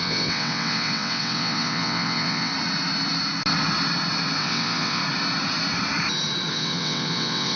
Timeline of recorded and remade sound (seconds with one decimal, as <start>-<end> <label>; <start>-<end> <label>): 0.0-2.5 remade; 2.5-4.4 recorded; 4.4-5.0 remade; 5.0-6.5 recorded; 6.5-7.6 remade